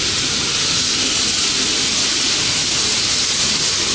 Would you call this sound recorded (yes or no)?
yes